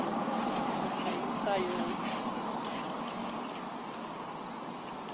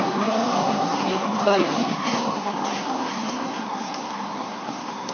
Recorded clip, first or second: first